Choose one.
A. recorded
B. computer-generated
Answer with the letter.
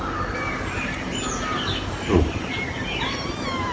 A